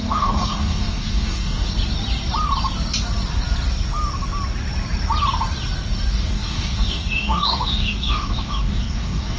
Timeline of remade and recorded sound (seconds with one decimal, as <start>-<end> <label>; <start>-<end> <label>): 0.0-1.7 remade; 1.7-6.1 recorded; 6.1-9.4 remade